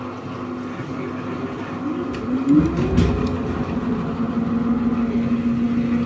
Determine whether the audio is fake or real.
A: real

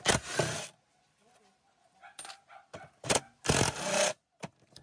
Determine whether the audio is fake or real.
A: real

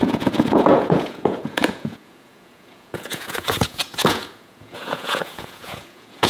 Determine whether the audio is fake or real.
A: fake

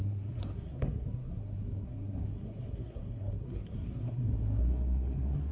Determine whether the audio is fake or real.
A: fake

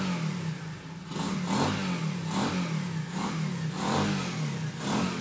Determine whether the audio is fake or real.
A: real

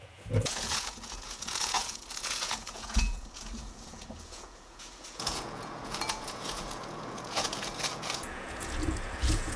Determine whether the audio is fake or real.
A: fake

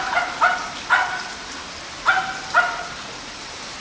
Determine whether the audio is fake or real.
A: real